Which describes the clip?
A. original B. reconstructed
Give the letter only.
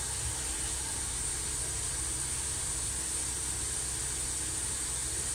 A